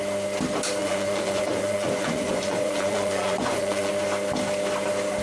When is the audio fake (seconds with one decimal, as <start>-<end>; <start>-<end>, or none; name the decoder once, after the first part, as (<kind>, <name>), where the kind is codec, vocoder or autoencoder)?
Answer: 0.8-3.9 (vocoder, Vocos)